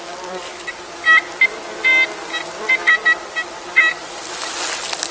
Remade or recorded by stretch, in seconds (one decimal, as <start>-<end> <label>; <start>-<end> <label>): 0.0-5.1 recorded